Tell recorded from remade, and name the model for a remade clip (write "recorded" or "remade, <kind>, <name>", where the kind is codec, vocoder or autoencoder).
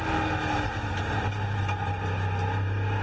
recorded